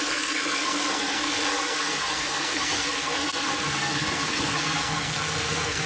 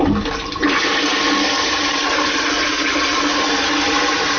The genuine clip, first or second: second